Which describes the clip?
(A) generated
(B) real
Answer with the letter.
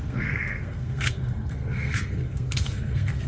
A